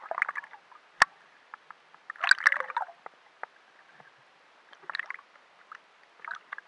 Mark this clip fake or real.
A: real